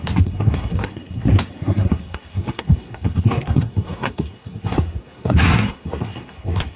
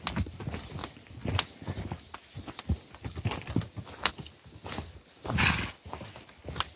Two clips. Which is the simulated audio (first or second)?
first